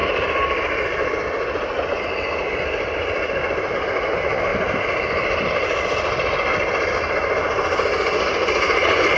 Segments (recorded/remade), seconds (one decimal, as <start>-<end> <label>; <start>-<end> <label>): 0.0-9.2 recorded